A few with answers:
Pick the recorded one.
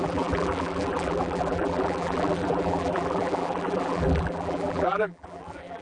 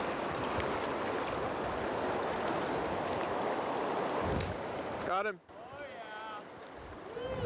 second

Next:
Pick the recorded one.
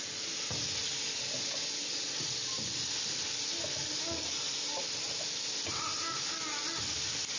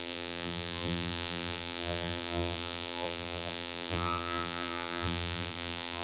first